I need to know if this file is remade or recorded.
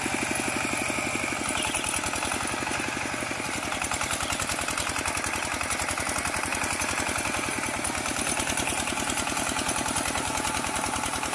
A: recorded